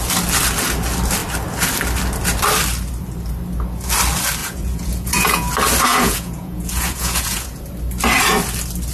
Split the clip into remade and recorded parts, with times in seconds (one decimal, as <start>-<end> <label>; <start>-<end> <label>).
0.0-4.4 recorded; 4.4-5.5 remade; 5.5-5.9 recorded; 5.9-7.6 remade; 7.6-8.9 recorded